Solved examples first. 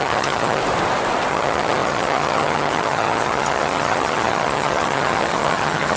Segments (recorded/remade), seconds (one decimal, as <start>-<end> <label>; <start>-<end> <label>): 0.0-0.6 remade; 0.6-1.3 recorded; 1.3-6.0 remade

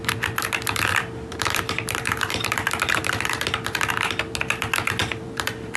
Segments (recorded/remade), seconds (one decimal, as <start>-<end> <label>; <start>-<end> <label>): 0.0-0.9 recorded; 0.9-3.9 remade; 3.9-5.0 recorded; 5.0-5.8 remade

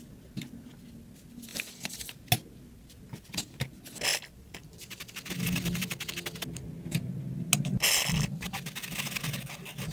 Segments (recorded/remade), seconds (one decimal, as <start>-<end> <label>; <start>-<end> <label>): 0.0-1.5 recorded; 1.5-2.2 remade; 2.2-4.1 recorded; 4.1-5.3 remade; 5.3-9.9 recorded

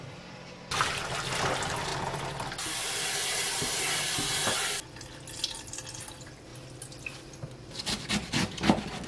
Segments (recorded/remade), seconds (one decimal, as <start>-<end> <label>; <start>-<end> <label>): 0.0-9.1 recorded

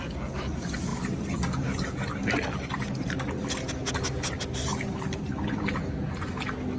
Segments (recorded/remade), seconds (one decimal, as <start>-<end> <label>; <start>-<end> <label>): 0.0-6.8 recorded